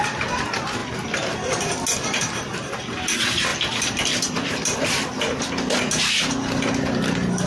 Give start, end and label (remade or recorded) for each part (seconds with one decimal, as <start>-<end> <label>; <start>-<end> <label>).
0.0-3.5 recorded; 3.5-4.5 remade; 4.5-7.5 recorded